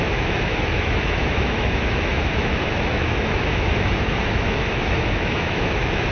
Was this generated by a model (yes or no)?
yes